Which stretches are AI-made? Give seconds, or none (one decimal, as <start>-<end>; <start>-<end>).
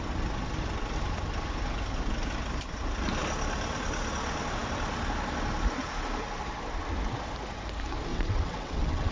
8.1-9.1